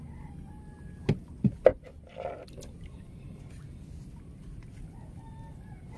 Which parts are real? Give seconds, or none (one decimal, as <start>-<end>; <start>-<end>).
0.0-6.0